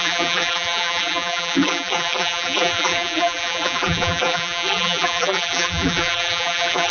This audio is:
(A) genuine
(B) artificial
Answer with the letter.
B